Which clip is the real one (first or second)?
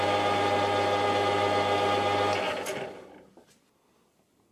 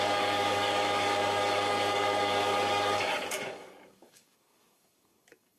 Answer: first